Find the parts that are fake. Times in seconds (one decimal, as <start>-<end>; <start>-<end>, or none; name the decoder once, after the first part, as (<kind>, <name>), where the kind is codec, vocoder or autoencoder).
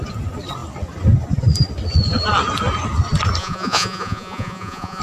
3.4-5.0 (vocoder, Vocos)